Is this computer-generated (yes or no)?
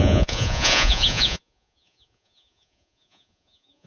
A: yes